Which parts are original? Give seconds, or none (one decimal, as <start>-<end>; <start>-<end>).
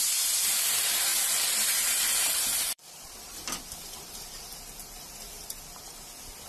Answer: 0.0-1.1; 4.0-6.5